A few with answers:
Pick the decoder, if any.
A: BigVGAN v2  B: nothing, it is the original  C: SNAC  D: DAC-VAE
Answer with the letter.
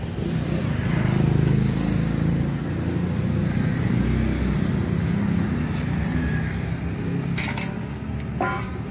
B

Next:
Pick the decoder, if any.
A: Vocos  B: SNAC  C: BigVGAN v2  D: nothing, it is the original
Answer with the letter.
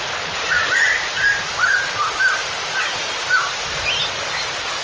D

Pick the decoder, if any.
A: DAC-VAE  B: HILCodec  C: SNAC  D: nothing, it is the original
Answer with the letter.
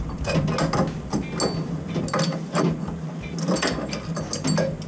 D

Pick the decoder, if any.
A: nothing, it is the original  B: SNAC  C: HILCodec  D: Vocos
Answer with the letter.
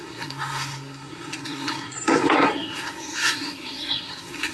B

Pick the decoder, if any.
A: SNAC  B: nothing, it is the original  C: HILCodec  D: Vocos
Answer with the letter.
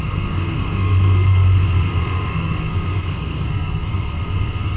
A